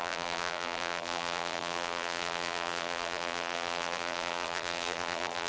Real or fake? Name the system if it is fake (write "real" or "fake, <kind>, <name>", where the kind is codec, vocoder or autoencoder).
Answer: fake, vocoder, BigVGAN v2